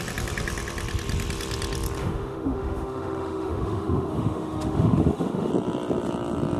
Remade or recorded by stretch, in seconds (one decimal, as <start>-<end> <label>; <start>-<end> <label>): 0.0-2.0 recorded; 2.0-5.5 remade; 5.5-6.6 recorded